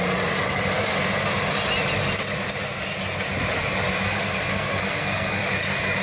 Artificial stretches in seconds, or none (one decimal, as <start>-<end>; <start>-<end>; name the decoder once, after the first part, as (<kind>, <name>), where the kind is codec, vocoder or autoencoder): 4.5-5.4 (codec, SNAC)